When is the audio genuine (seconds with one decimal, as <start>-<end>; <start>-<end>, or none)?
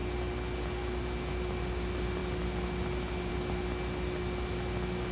0.0-5.1